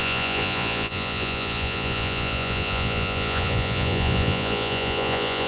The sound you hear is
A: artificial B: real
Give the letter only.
A